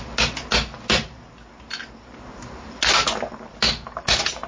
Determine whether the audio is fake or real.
real